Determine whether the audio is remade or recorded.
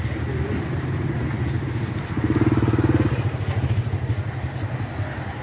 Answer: recorded